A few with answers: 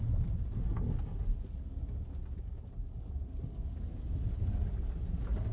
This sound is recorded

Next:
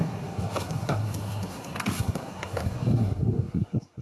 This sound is remade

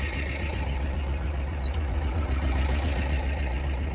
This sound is remade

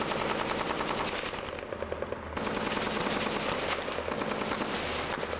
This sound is recorded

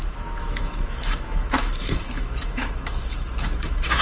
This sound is remade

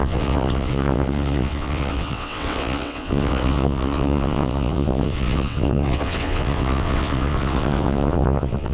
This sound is remade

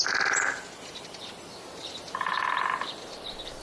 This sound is recorded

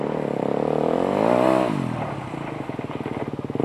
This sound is recorded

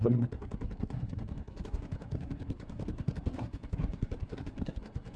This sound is remade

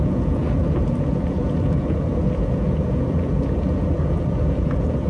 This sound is remade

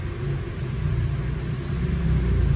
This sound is recorded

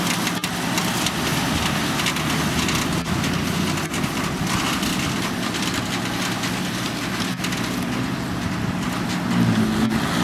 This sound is recorded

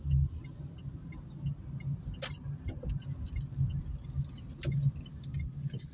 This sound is recorded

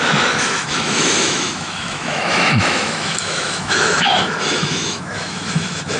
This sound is remade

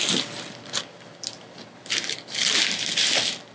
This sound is recorded